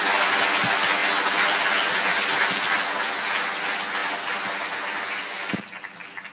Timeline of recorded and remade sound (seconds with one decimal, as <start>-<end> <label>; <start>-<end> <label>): 0.0-6.3 recorded